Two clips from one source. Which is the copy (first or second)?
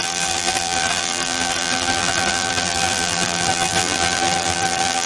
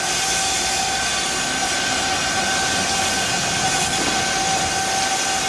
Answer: first